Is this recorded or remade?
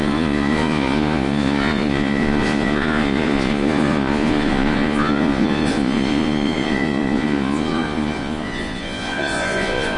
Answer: remade